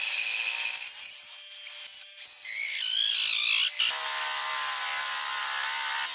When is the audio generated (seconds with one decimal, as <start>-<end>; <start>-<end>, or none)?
none